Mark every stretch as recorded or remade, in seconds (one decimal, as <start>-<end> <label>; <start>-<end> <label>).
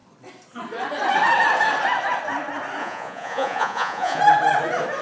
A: 0.0-2.8 recorded; 2.8-4.2 remade; 4.2-5.0 recorded